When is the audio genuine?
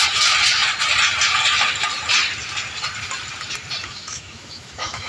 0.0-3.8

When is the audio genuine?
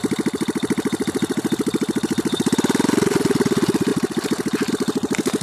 0.0-5.4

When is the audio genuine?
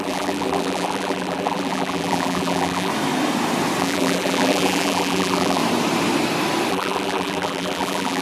2.9-3.8; 5.6-6.7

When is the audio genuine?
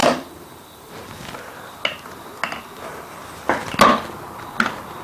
0.9-5.0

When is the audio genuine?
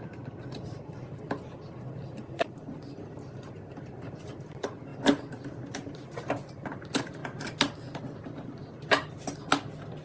0.0-10.0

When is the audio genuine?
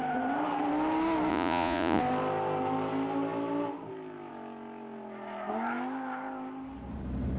0.0-1.3; 2.0-7.4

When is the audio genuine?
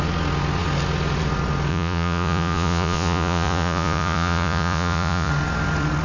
0.0-1.7; 5.3-6.0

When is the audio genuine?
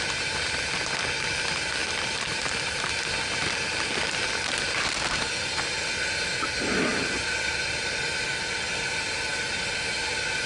0.0-1.8; 2.9-10.5